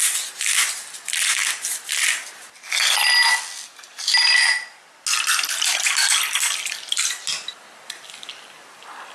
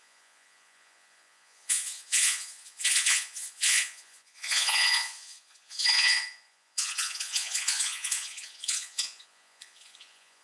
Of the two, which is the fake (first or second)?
second